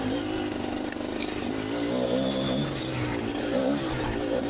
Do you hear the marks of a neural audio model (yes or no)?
no